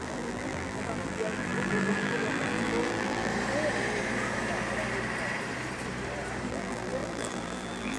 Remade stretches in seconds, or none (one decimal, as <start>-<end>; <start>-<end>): 0.0-3.3; 6.5-8.0